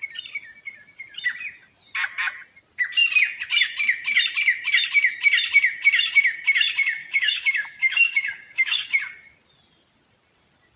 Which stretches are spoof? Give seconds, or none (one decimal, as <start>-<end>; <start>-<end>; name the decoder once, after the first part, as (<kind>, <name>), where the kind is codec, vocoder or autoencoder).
7.0-9.0 (codec, DAC)